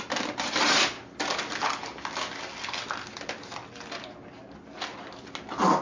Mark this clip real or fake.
real